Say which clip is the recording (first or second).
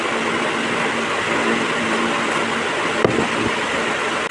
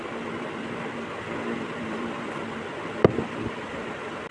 first